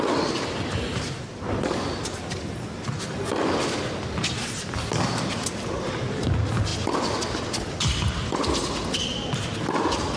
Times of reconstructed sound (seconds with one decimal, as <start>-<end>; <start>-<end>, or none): none

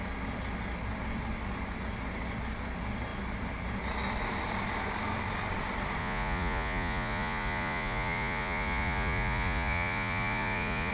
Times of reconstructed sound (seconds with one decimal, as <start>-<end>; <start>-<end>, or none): 6.0-10.9

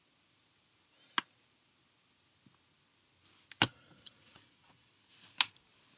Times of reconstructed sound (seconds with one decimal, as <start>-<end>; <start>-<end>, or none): 3.7-4.9

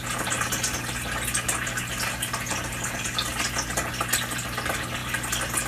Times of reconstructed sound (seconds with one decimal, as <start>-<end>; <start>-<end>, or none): none

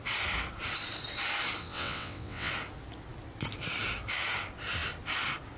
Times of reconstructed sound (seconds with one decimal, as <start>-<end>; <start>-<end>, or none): 1.6-2.5

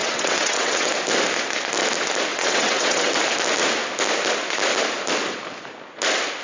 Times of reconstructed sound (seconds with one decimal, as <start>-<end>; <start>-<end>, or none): 0.0-0.9; 2.3-3.1